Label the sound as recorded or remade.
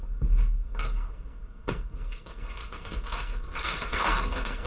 remade